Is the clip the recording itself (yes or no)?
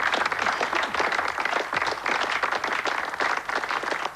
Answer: yes